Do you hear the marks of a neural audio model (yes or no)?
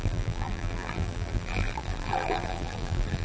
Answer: yes